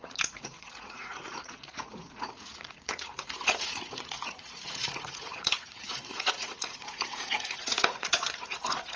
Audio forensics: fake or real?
fake